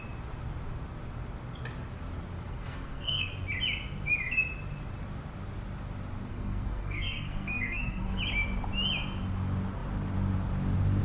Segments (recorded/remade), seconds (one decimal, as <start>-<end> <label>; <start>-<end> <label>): 0.0-2.5 recorded; 2.5-3.3 remade; 3.3-6.3 recorded; 6.3-8.2 remade; 8.2-11.0 recorded